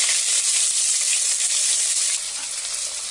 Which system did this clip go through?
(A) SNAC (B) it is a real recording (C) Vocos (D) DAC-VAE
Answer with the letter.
B